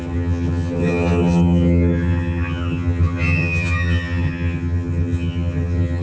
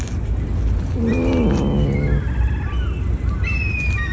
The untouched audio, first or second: second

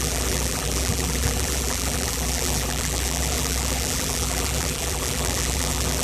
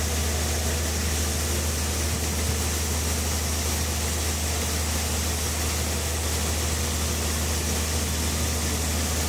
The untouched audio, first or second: second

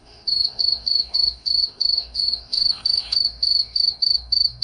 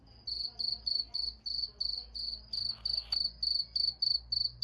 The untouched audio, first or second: second